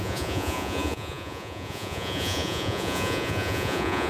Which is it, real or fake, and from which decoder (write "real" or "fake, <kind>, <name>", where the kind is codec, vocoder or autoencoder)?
fake, vocoder, Vocos